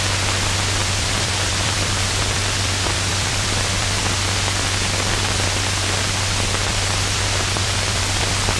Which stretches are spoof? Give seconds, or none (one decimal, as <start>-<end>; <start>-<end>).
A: 0.8-4.0; 6.7-8.6